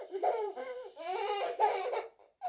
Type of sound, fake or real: fake